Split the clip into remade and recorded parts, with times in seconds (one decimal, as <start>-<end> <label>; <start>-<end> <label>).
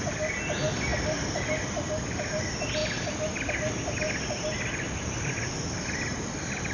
0.0-6.7 recorded